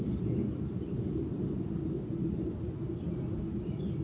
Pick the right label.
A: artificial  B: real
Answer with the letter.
B